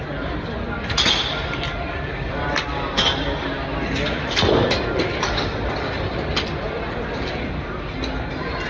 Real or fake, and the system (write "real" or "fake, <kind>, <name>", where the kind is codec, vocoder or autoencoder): real